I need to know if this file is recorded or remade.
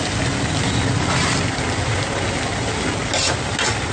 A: recorded